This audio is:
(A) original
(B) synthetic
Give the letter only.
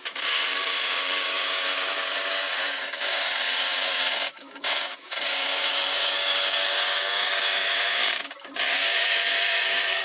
B